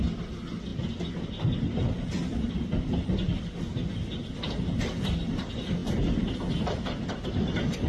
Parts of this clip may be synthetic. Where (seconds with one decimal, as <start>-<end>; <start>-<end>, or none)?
none